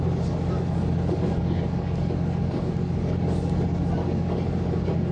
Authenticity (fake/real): fake